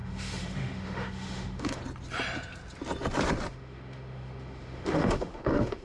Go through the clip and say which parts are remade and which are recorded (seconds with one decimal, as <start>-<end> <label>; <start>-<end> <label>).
0.0-1.8 remade; 1.8-3.5 recorded; 3.5-5.8 remade

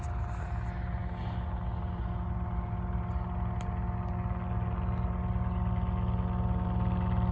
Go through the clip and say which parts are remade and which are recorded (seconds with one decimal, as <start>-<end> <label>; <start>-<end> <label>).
0.0-7.3 recorded

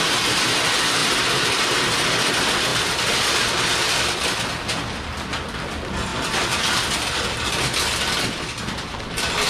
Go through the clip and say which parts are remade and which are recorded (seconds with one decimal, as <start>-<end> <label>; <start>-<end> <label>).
0.0-1.0 recorded; 1.0-1.5 remade; 1.5-9.5 recorded

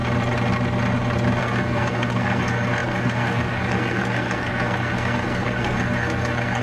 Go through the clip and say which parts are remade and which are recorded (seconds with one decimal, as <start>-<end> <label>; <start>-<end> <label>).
0.0-1.4 recorded; 1.4-6.6 remade

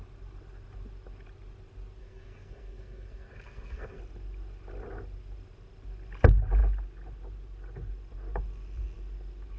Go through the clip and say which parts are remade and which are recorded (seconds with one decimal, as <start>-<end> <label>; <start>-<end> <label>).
0.0-2.0 recorded; 2.0-4.0 remade; 4.0-9.6 recorded

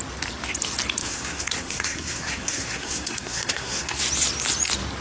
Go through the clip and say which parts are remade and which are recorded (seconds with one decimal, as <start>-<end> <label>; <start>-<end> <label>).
0.0-1.0 recorded; 1.0-4.0 remade; 4.0-5.0 recorded

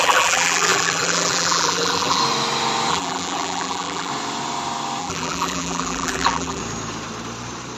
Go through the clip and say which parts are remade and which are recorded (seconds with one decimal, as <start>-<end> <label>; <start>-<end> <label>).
0.0-2.2 remade; 2.2-2.9 recorded; 2.9-4.1 remade; 4.1-5.0 recorded; 5.0-6.6 remade; 6.6-7.8 recorded